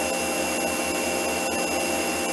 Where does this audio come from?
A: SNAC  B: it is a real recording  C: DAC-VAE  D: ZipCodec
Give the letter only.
B